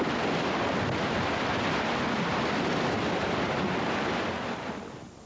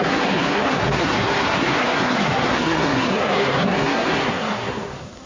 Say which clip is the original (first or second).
first